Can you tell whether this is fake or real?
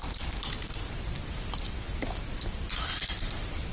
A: real